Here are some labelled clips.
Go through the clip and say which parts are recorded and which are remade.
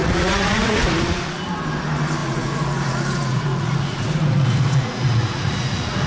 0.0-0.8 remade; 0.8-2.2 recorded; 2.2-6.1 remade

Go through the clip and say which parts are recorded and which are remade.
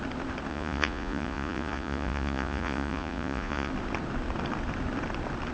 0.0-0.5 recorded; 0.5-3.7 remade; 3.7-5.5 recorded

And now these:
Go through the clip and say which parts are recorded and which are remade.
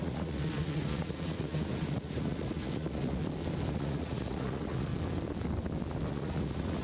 0.0-3.2 remade; 3.2-3.7 recorded; 3.7-4.9 remade; 4.9-6.1 recorded; 6.1-6.8 remade